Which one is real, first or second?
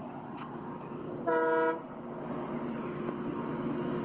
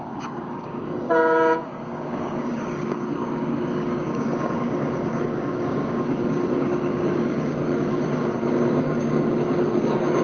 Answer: first